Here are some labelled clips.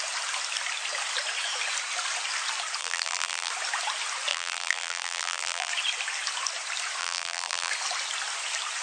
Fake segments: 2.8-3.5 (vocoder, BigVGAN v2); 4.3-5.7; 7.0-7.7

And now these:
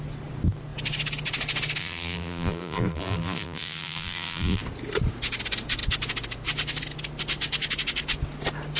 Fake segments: 1.8-4.6 (vocoder, BigVGAN v2)

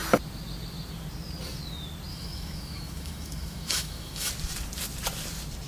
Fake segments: 2.1-4.3 (autoencoder, DAC-VAE)

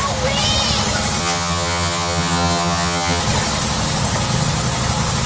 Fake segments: 1.2-3.2 (vocoder, HiFi-GAN)

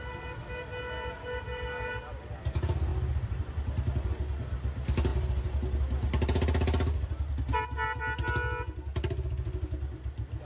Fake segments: none